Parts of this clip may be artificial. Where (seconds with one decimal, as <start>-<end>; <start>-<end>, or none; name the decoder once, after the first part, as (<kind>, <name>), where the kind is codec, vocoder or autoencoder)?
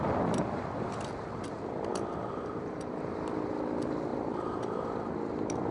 1.9-2.9 (vocoder, BigVGAN v2); 4.1-5.0